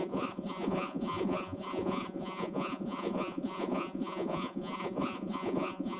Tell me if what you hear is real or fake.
fake